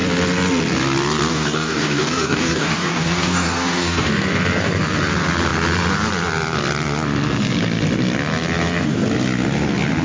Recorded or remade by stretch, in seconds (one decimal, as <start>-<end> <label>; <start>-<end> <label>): 0.0-1.3 recorded; 1.3-4.1 remade; 4.1-10.0 recorded